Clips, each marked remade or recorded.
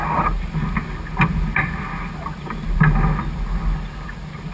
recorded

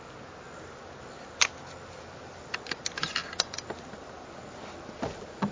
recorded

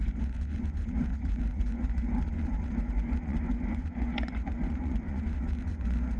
remade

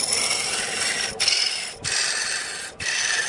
recorded